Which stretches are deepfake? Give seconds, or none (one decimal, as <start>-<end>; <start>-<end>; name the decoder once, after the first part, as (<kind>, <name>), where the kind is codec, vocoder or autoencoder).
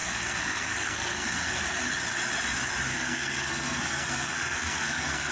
0.0-1.6 (codec, SNAC); 2.9-5.3